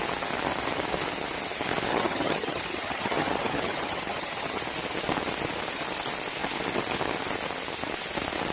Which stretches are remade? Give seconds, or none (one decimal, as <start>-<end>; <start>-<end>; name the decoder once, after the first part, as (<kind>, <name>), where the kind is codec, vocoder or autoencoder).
1.9-4.6 (vocoder, HiFi-GAN)